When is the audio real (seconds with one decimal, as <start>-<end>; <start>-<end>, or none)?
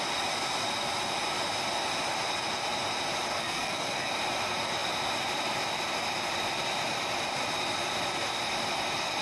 0.0-3.3; 4.1-9.2